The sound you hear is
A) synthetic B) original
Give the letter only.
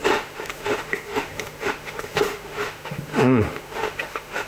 A